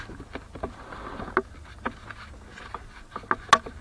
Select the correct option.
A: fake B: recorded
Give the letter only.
B